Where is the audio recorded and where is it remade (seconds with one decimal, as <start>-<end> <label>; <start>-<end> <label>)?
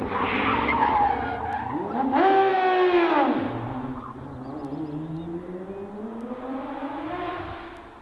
0.0-2.5 recorded; 2.5-3.1 remade; 3.1-6.8 recorded; 6.8-7.3 remade; 7.3-8.0 recorded